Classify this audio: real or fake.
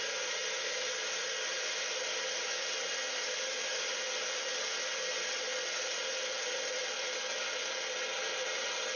real